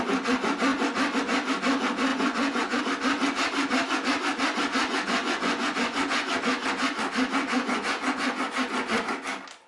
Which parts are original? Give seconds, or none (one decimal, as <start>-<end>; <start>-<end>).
0.0-2.1; 2.8-4.8; 6.3-7.4; 8.4-9.7